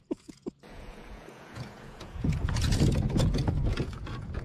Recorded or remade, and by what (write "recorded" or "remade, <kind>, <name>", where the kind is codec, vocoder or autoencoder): remade, vocoder, Vocos